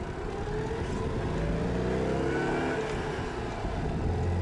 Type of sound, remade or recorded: recorded